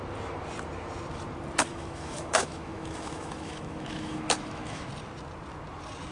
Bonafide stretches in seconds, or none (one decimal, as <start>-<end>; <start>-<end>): 0.0-1.7; 4.9-6.1